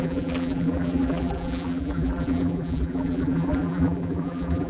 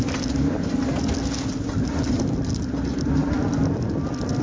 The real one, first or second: second